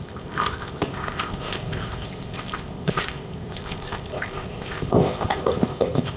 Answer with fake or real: fake